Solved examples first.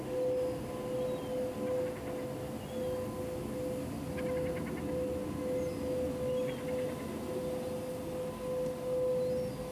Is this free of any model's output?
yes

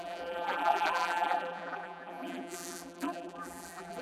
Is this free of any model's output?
no